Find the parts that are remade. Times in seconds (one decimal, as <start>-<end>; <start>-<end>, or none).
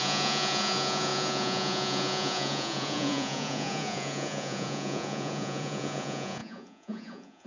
0.0-7.5